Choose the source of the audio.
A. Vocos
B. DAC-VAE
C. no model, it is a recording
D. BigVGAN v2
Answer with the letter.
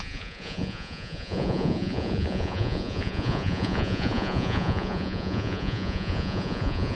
A